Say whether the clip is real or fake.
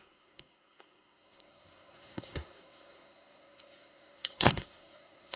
fake